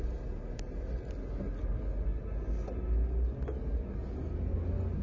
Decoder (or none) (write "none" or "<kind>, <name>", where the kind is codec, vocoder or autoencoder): none